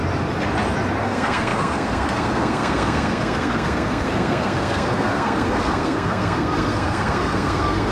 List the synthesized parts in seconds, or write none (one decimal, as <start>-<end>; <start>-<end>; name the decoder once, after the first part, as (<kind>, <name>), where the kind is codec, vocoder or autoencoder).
1.0-7.9 (codec, SNAC)